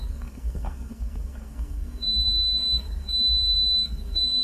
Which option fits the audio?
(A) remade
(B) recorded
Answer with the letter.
A